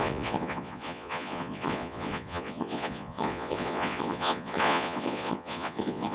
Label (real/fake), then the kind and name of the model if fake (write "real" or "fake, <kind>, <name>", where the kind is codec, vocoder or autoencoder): fake, vocoder, Vocos